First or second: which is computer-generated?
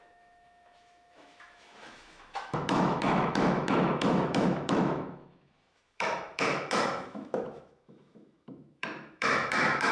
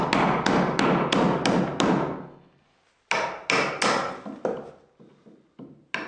first